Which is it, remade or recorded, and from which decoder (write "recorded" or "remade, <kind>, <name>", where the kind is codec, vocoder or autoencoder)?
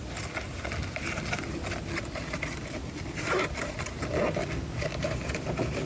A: recorded